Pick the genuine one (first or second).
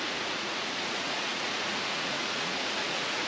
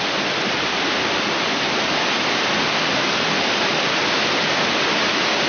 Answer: second